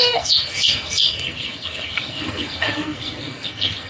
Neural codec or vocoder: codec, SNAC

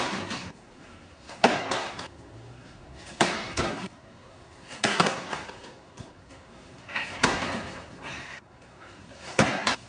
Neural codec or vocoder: codec, SNAC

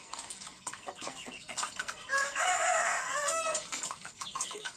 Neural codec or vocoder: codec, SNAC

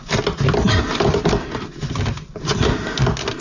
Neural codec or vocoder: none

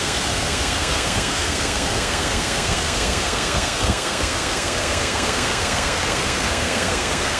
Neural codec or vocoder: codec, SNAC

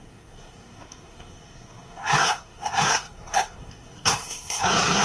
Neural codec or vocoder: codec, SNAC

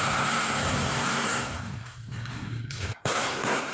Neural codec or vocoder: codec, SNAC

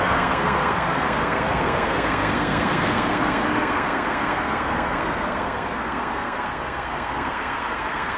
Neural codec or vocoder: codec, SNAC